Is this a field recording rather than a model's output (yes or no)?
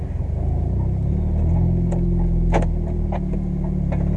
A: yes